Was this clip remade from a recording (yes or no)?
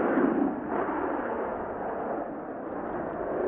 no